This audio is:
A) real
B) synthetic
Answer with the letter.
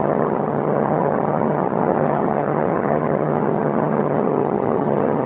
B